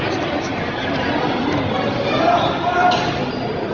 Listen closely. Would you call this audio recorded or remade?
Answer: recorded